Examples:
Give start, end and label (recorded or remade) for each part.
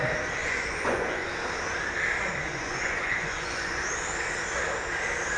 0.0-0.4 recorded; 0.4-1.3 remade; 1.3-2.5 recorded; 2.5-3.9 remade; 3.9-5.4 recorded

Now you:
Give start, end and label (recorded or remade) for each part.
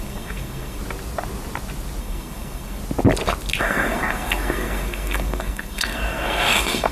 0.0-0.8 remade; 0.8-2.0 recorded; 2.0-2.8 remade; 2.8-3.6 recorded; 3.6-6.9 remade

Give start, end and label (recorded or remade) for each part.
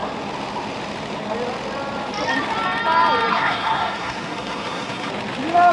0.0-3.3 recorded; 3.3-5.1 remade; 5.1-5.7 recorded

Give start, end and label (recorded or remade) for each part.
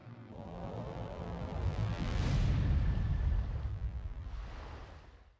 0.0-2.2 remade; 2.2-3.7 recorded; 3.7-4.3 remade; 4.3-5.4 recorded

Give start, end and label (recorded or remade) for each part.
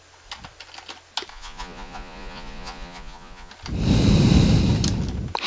0.0-1.3 recorded; 1.3-3.5 remade; 3.5-5.5 recorded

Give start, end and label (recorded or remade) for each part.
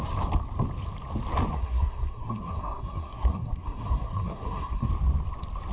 0.0-1.5 recorded; 1.5-4.9 remade; 4.9-5.7 recorded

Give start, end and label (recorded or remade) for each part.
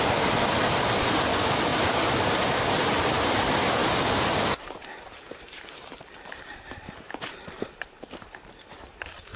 0.0-1.7 recorded; 1.7-3.3 remade; 3.3-3.8 recorded; 3.8-7.6 remade; 7.6-9.4 recorded